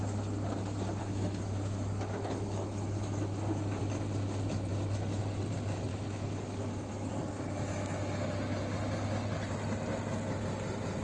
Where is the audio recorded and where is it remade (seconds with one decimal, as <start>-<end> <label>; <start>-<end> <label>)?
0.0-1.0 recorded; 1.0-3.8 remade; 3.8-5.9 recorded; 5.9-7.1 remade; 7.1-11.0 recorded